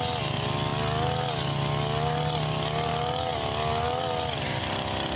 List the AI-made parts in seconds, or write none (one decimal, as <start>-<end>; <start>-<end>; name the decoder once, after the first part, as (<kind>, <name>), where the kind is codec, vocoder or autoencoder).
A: none